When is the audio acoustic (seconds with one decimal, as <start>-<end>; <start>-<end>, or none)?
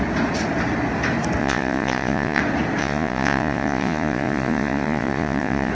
0.0-1.4; 2.4-2.8